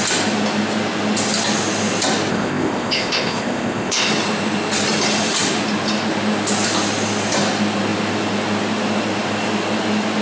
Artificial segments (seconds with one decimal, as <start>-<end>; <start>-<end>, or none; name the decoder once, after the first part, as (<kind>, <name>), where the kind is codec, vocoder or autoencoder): 2.3-4.1 (codec, ZipCodec)